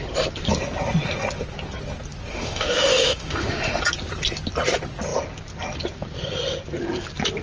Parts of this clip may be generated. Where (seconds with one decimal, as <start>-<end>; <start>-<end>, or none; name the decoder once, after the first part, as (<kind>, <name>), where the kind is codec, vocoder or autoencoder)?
2.3-3.8 (autoencoder, DAC-VAE)